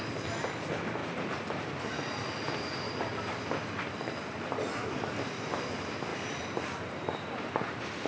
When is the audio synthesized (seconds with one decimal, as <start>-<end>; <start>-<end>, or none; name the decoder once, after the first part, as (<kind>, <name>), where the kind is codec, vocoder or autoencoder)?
1.0-1.6 (vocoder, BigVGAN v2); 6.1-7.5